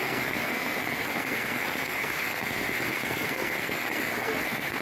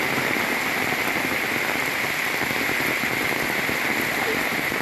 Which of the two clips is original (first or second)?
second